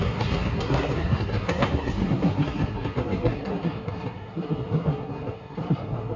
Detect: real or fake fake